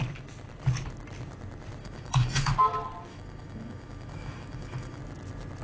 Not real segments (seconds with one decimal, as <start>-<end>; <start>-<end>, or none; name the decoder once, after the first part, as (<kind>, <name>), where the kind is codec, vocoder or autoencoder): 1.8-2.5 (autoencoder, DAC-VAE); 3.1-5.0